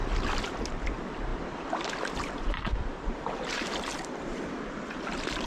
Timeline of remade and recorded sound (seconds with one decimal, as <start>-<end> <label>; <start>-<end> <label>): 0.0-1.3 recorded; 1.3-4.6 remade; 4.6-5.5 recorded